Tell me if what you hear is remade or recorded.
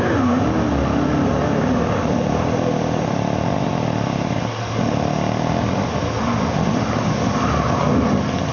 recorded